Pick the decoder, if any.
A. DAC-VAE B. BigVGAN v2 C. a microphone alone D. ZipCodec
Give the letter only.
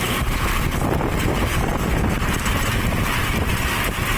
C